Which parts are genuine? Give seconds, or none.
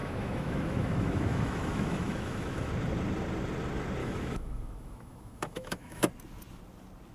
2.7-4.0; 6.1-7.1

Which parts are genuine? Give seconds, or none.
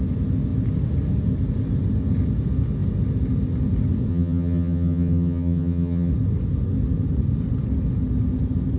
0.0-4.1; 6.1-8.8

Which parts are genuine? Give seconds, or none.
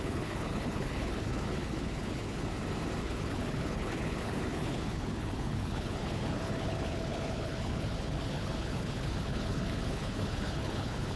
2.5-3.0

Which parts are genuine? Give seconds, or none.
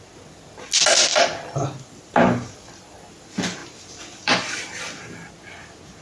0.0-1.1; 2.7-3.6; 5.3-6.0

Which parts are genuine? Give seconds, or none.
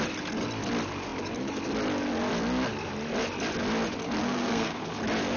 0.0-4.2; 4.9-5.4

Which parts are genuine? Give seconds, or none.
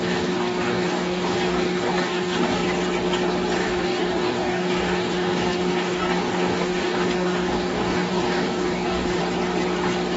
2.6-3.6; 9.2-10.2